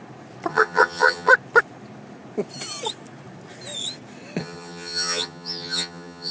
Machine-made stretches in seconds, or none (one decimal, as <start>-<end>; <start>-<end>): 0.5-1.3; 4.4-6.3

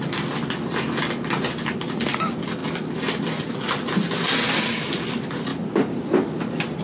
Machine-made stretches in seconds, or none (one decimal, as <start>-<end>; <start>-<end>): none

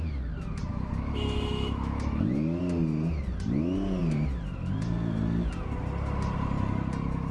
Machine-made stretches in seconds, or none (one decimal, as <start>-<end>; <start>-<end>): 0.7-2.6

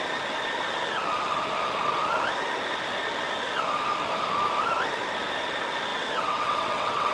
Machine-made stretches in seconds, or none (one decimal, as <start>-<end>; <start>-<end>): 5.9-7.1

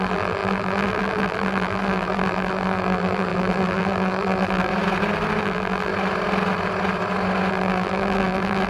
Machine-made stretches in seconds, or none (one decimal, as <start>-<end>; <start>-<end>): 0.0-4.7; 5.4-5.9; 7.5-8.7

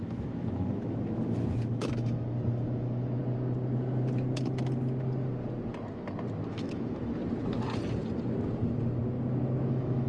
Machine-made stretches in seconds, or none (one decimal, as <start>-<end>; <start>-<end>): 0.0-3.2; 6.5-7.2; 9.7-10.1